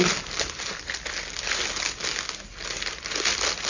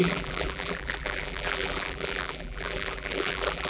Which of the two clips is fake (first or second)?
second